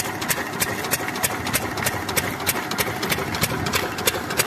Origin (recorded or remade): recorded